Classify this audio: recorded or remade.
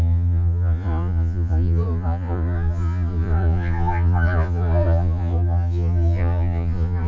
remade